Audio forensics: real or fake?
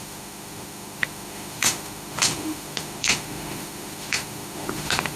fake